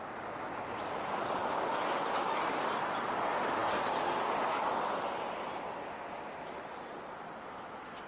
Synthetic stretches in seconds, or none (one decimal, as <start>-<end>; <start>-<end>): none